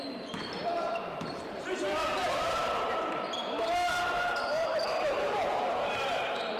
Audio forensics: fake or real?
fake